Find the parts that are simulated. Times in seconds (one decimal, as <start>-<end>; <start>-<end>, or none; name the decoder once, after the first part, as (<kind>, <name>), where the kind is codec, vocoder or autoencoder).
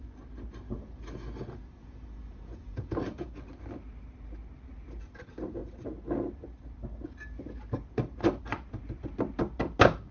1.8-3.4 (vocoder, Vocos)